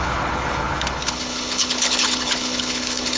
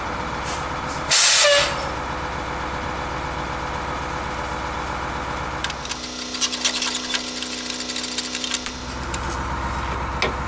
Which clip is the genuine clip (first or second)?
second